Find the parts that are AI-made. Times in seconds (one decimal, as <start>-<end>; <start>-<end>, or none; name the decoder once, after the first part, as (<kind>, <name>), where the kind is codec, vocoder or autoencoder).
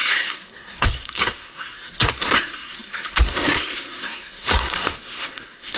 0.0-5.8 (codec, SNAC)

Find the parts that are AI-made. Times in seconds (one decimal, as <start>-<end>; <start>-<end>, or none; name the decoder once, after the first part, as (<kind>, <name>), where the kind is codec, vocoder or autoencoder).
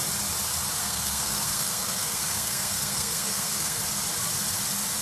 0.8-3.8 (codec, SNAC)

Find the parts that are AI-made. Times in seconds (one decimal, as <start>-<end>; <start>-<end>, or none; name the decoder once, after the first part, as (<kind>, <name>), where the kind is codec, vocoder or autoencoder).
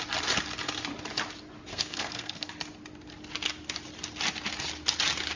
1.7-2.5 (codec, SNAC)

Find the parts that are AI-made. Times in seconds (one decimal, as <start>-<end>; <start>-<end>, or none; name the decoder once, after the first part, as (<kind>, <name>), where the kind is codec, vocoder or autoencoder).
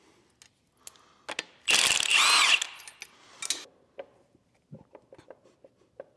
none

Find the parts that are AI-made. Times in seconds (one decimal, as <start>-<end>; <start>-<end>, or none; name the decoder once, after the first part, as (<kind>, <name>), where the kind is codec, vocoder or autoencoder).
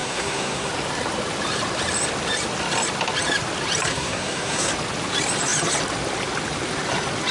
0.0-0.7 (codec, SNAC); 3.9-4.7